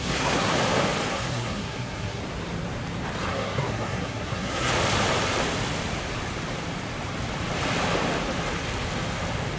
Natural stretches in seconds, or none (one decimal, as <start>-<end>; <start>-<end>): 0.5-1.1; 2.2-3.3; 4.7-9.6